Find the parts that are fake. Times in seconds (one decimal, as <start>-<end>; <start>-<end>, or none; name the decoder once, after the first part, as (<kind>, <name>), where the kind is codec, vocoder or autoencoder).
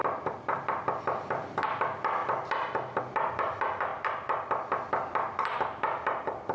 0.0-1.0 (vocoder, BigVGAN v2); 2.2-3.0; 3.9-4.9